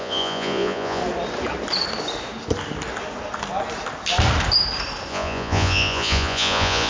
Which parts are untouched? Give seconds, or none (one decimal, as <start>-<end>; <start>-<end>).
1.0-5.1